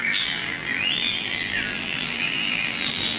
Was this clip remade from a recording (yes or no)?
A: yes